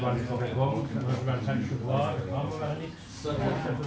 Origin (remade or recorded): recorded